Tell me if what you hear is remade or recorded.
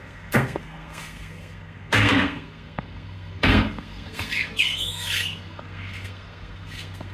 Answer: remade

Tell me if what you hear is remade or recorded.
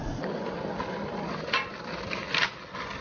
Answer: recorded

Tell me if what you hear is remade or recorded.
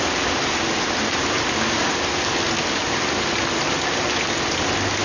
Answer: recorded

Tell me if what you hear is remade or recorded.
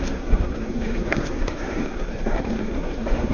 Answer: remade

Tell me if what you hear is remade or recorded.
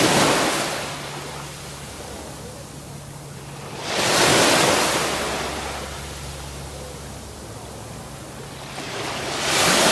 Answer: recorded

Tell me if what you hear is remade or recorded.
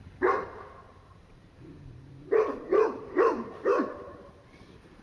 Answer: remade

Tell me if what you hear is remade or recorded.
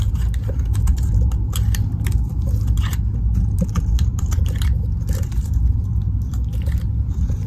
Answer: remade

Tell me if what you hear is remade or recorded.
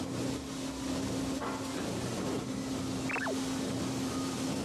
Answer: recorded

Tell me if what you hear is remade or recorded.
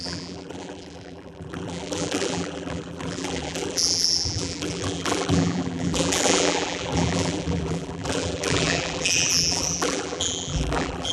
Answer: remade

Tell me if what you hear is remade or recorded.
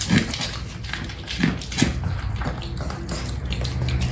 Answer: recorded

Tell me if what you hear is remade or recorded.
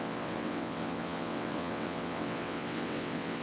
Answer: remade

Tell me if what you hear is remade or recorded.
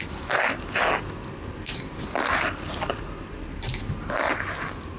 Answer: recorded